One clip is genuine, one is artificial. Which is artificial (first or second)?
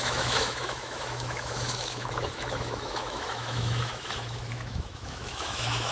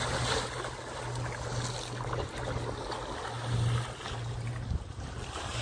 first